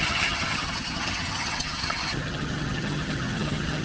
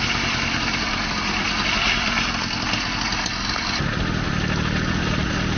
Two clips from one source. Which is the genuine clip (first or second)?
second